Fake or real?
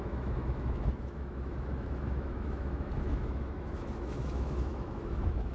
fake